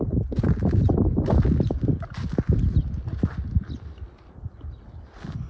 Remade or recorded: recorded